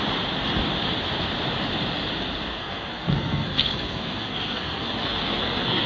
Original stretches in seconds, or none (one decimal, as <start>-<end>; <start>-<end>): 0.0-2.5